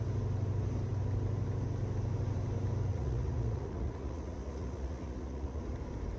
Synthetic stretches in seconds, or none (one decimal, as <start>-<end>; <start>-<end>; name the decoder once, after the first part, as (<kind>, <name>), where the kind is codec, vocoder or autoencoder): 2.9-5.6 (vocoder, Vocos)